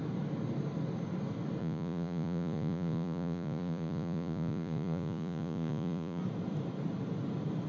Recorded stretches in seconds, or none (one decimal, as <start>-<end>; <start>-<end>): 0.0-1.6; 6.2-7.7